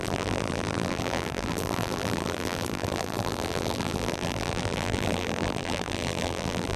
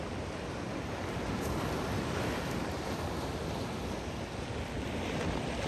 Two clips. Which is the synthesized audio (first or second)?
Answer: first